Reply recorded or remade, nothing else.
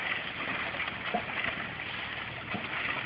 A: recorded